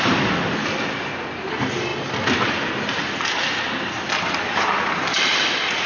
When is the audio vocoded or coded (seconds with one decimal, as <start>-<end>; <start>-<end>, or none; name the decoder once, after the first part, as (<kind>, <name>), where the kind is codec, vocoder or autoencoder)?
none